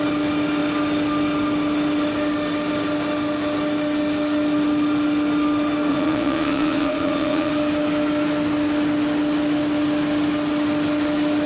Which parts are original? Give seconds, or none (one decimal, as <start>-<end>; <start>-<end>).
0.0-5.9; 7.5-11.5